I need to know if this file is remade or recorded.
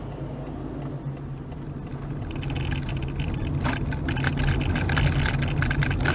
recorded